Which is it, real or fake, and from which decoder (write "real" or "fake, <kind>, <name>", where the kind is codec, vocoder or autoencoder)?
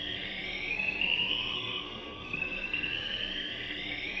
fake, codec, SNAC